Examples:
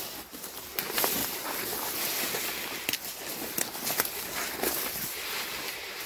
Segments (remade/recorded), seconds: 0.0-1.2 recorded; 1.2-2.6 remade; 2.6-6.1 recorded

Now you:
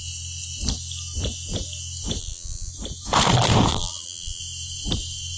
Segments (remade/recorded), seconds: 0.0-2.2 recorded; 2.2-2.7 remade; 2.7-3.7 recorded; 3.7-4.4 remade; 4.4-5.4 recorded

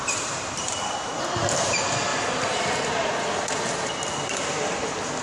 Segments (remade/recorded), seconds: 0.0-2.1 remade; 2.1-5.2 recorded

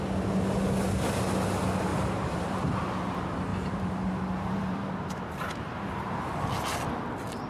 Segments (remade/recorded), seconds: 0.0-1.9 recorded; 1.9-2.7 remade; 2.7-3.5 recorded; 3.5-6.4 remade; 6.4-7.5 recorded

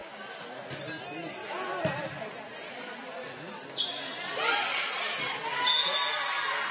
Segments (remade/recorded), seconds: 0.0-1.4 recorded; 1.4-2.7 remade; 2.7-4.1 recorded; 4.1-5.4 remade; 5.4-6.7 recorded

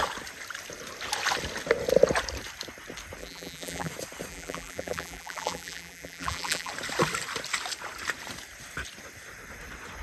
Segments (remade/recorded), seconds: 0.0-3.2 recorded; 3.2-3.9 remade; 3.9-4.3 recorded; 4.3-6.7 remade; 6.7-10.0 recorded

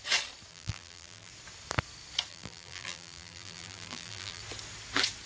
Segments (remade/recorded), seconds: 0.0-0.5 recorded; 0.5-1.3 remade; 1.3-2.3 recorded; 2.3-4.4 remade; 4.4-5.3 recorded